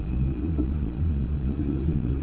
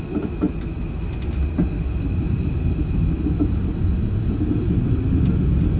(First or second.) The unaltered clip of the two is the second